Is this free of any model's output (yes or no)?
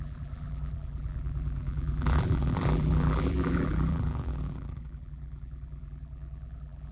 no